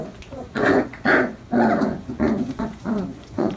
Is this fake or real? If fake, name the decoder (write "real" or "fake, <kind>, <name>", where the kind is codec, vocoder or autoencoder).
fake, vocoder, Vocos